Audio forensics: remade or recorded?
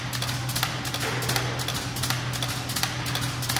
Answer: recorded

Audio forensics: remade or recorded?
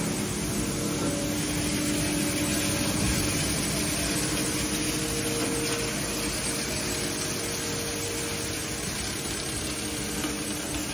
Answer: recorded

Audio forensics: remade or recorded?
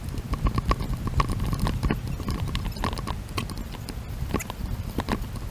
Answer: recorded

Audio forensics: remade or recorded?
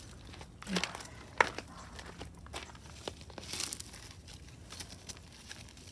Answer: recorded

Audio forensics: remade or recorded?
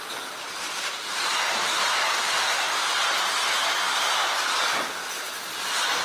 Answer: recorded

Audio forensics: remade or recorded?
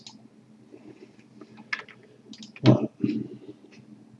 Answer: recorded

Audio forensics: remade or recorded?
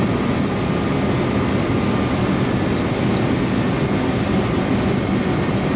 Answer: recorded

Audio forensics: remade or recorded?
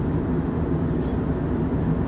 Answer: recorded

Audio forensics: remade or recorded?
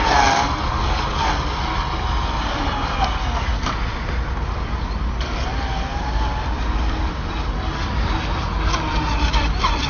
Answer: recorded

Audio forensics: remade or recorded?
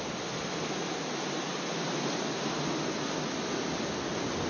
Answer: recorded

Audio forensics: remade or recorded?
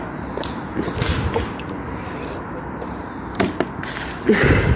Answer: recorded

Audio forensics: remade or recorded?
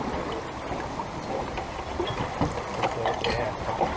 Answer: recorded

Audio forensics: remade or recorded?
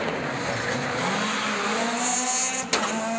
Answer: recorded